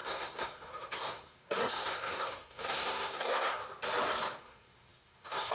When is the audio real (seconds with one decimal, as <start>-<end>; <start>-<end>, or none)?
3.6-4.4